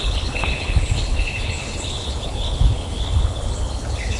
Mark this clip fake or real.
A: fake